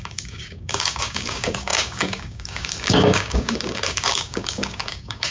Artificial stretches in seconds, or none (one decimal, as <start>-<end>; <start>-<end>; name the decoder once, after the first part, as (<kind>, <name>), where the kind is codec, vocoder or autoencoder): 0.0-5.3 (codec, DAC)